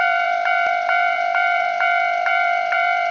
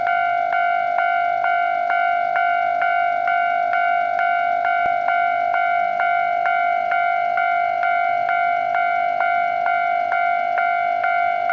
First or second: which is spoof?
first